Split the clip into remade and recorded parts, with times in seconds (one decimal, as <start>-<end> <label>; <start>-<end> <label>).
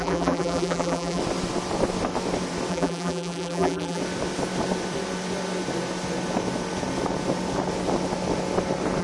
0.0-1.2 remade; 1.2-2.7 recorded; 2.7-4.0 remade; 4.0-9.0 recorded